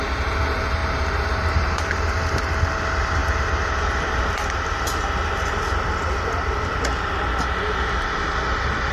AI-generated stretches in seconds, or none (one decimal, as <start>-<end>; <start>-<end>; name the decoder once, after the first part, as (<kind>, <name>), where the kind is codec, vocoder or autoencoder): 0.8-2.5 (vocoder, BigVGAN v2); 3.2-4.2